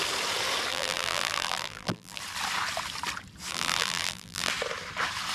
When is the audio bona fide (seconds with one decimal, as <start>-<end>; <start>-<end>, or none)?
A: 0.0-0.7; 2.2-3.5; 4.5-5.3